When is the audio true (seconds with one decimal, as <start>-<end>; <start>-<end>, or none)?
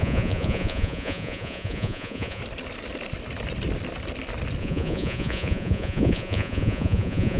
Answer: 2.4-4.6